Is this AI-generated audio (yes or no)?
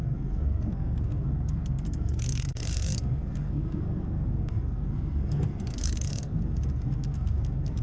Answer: yes